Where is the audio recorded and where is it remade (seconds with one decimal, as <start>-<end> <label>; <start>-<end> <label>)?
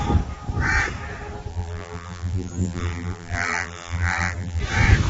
0.0-1.5 recorded; 1.5-4.6 remade; 4.6-5.1 recorded